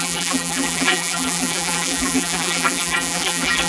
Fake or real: fake